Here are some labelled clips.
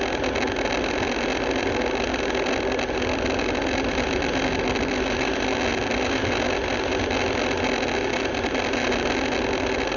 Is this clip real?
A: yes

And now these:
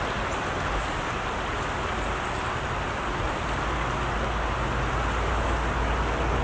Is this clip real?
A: yes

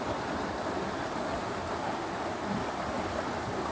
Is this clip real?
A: yes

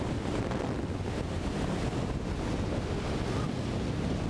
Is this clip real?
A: yes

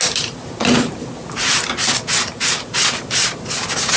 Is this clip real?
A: yes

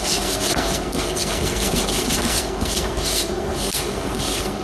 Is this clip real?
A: no